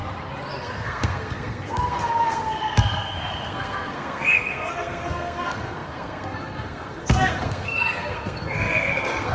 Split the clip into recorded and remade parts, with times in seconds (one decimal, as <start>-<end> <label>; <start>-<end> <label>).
0.0-0.6 recorded; 0.6-9.3 remade